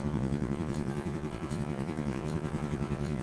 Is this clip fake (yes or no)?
yes